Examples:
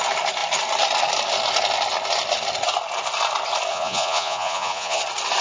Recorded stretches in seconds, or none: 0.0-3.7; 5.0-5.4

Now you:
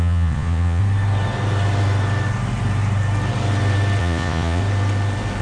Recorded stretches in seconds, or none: 0.8-4.0; 4.6-5.4